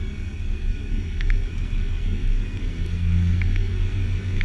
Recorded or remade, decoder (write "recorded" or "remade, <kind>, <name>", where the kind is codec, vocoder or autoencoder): remade, codec, SNAC